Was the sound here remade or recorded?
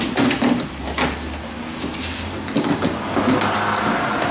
recorded